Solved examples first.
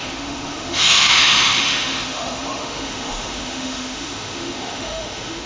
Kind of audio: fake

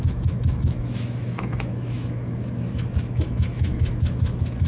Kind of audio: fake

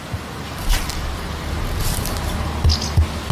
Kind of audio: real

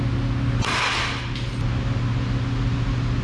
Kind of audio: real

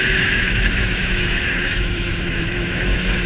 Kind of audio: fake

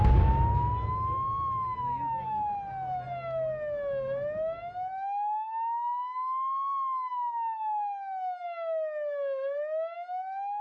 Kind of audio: real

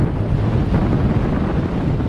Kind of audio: real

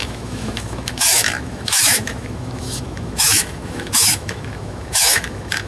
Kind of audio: fake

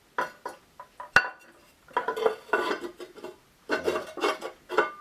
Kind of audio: real